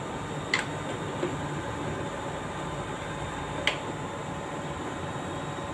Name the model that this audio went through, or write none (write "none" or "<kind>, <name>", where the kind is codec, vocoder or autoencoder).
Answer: none